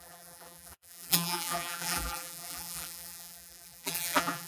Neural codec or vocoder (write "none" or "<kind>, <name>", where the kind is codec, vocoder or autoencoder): vocoder, BigVGAN v2